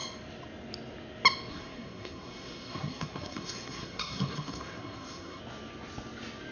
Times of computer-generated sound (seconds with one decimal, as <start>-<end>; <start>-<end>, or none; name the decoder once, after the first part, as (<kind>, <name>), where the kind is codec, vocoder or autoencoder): 1.5-5.4 (codec, SNAC)